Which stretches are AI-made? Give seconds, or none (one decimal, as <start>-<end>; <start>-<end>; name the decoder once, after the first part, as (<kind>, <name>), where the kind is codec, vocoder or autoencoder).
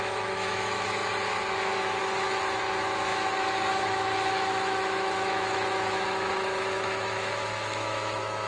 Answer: 0.0-8.5 (autoencoder, DAC-VAE)